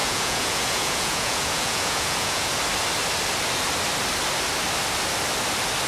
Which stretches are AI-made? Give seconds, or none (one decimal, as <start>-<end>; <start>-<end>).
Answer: 0.0-2.5